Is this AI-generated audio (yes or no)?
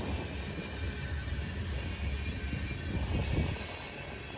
no